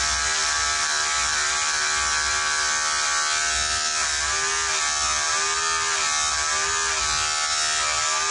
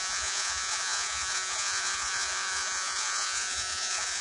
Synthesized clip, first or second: second